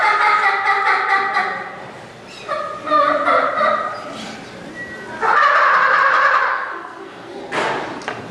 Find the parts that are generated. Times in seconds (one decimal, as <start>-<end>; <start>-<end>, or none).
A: 6.5-7.4